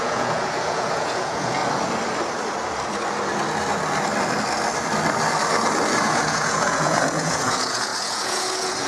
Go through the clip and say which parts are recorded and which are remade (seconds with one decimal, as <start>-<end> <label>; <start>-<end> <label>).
0.0-1.6 remade; 1.6-6.0 recorded; 6.0-8.9 remade